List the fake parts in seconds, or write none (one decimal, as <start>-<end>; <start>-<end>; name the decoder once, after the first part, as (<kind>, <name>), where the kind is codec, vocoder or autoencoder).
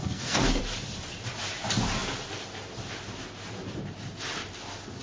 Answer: 0.0-0.6 (codec, SNAC)